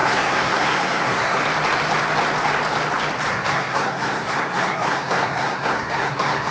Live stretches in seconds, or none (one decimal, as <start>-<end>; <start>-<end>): 1.4-3.3